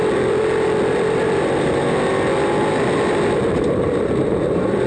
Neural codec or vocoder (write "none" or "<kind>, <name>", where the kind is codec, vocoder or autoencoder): none